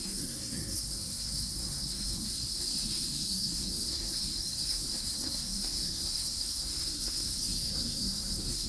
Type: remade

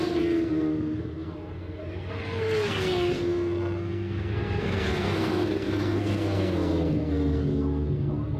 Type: remade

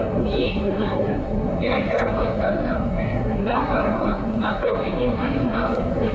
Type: remade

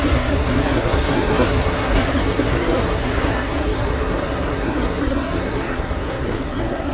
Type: remade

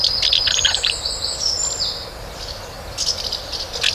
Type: recorded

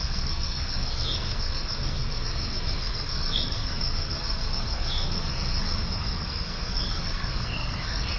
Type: remade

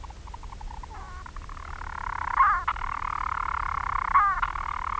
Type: recorded